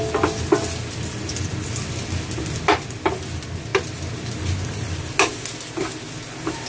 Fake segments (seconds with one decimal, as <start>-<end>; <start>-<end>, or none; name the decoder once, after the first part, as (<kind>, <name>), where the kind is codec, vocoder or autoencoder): none